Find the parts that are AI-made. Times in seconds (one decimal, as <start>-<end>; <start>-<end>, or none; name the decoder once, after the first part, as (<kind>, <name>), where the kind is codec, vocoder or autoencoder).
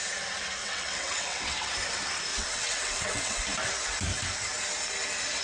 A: 0.6-1.7 (vocoder, WaveNeXt); 2.3-3.4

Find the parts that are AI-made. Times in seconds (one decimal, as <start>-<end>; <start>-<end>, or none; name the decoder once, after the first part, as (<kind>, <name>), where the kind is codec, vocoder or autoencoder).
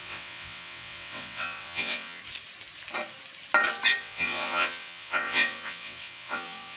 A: 0.0-2.2 (vocoder, WaveNeXt); 4.0-6.8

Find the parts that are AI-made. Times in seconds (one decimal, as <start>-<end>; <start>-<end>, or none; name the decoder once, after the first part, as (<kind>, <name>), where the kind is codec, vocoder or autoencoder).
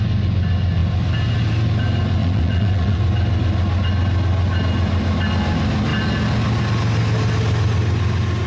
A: 2.2-3.0 (vocoder, WaveNeXt)